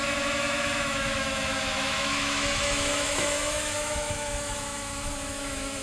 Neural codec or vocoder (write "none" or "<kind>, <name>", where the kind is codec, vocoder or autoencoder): autoencoder, DAC-VAE